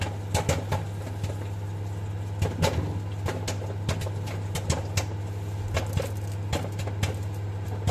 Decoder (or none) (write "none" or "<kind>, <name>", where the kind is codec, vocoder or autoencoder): none